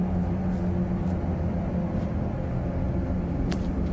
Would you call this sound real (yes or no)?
yes